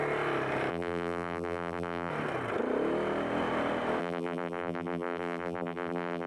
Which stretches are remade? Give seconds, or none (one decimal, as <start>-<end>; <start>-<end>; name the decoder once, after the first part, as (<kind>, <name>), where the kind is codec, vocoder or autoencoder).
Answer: 0.7-2.1 (vocoder, BigVGAN v2); 4.0-6.3